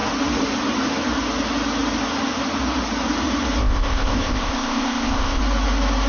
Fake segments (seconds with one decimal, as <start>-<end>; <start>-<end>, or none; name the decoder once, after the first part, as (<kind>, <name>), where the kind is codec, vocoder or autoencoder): 3.6-5.4 (codec, ZipCodec)